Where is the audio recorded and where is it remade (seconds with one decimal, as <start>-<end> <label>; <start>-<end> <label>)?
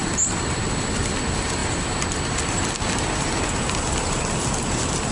0.0-1.1 remade; 1.1-5.1 recorded